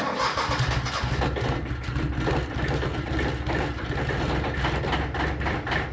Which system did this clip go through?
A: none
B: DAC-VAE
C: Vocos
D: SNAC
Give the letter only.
A